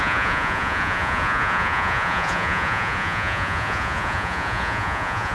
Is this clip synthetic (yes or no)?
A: yes